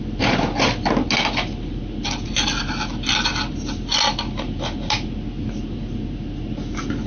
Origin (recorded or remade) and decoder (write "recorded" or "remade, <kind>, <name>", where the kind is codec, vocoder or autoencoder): recorded